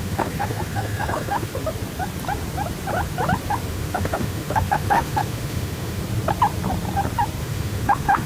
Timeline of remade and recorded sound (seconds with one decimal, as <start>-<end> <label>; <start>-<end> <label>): 0.0-1.5 remade; 1.5-3.7 recorded; 3.7-6.0 remade; 6.0-7.4 recorded; 7.4-8.3 remade